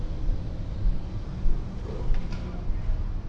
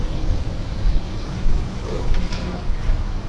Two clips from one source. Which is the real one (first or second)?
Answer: first